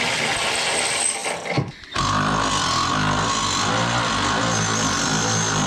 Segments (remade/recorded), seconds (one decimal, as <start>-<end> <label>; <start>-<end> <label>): 0.0-5.7 recorded